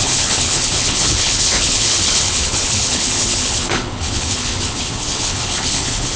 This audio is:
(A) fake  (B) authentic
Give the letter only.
A